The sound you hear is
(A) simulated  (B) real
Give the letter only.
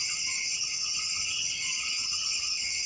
A